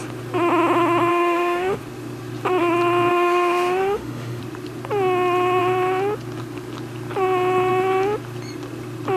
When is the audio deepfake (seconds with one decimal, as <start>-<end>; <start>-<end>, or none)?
1.1-1.8; 3.1-4.4